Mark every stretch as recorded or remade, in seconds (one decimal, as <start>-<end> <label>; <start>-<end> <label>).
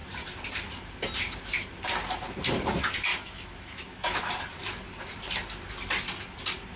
0.0-3.1 recorded; 3.1-4.3 remade; 4.3-6.8 recorded